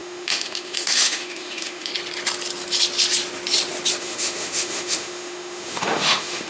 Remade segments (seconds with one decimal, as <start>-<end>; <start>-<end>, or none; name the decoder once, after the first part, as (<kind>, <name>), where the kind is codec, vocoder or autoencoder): 0.0-1.9 (autoencoder, DAC-VAE); 4.0-6.5